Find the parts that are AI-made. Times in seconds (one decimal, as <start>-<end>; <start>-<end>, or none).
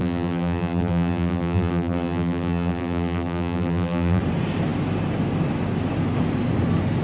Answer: 0.0-4.2